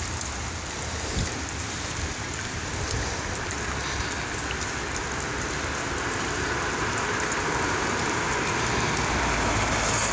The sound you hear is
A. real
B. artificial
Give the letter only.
A